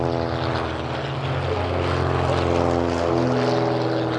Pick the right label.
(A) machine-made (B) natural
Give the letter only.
B